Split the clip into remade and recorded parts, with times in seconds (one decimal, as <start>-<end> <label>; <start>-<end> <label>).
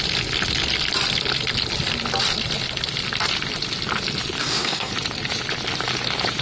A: 0.0-4.4 recorded; 4.4-4.9 remade; 4.9-6.4 recorded